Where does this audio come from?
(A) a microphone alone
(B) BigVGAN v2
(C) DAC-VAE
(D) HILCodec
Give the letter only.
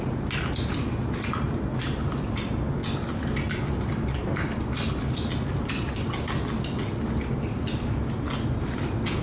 A